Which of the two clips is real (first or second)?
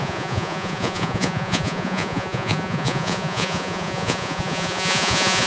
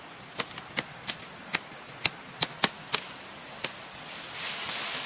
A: second